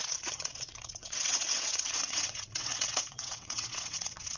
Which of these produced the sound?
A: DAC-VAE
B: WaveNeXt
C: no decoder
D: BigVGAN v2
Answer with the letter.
B